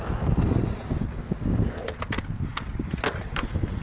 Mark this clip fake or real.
real